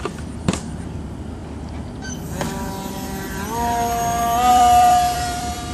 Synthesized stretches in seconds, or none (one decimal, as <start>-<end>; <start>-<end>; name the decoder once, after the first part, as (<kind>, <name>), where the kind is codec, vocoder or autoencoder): 0.0-1.4 (vocoder, BigVGAN v2); 4.5-5.7